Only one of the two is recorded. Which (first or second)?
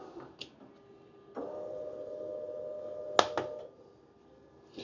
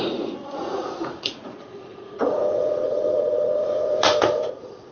first